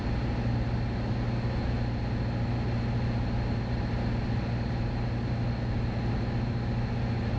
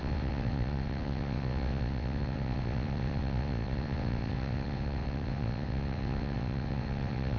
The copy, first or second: second